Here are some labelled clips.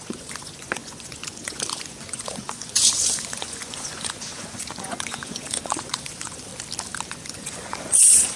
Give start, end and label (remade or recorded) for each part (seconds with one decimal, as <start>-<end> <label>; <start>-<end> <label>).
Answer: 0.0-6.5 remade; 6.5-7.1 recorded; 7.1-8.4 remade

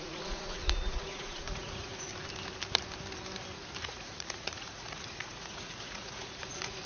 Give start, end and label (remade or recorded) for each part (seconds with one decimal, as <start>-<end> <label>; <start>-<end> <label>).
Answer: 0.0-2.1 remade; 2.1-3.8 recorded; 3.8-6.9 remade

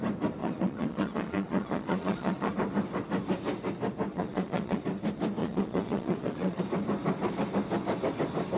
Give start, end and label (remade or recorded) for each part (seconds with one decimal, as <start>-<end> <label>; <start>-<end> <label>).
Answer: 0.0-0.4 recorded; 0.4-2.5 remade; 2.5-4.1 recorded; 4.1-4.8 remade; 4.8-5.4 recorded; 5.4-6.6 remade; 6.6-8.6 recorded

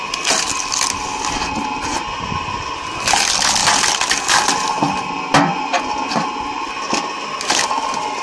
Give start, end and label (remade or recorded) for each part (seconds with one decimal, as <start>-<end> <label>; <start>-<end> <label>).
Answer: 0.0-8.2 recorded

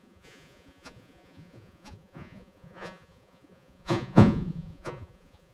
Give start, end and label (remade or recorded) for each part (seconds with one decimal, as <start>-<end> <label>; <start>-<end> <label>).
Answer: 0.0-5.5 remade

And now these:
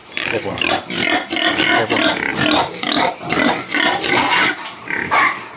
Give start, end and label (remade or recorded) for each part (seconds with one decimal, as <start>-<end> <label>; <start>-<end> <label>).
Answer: 0.0-0.6 remade; 0.6-5.6 recorded